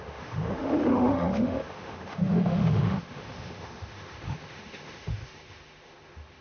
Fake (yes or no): yes